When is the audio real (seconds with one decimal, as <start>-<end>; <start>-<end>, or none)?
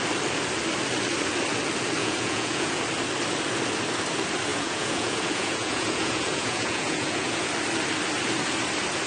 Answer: 0.0-2.0; 2.8-4.5; 7.4-9.1